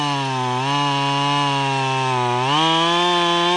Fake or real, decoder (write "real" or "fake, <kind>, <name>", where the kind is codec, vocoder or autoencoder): real